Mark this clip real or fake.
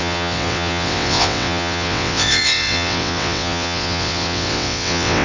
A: fake